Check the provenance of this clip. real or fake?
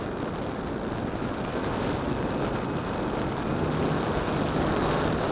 real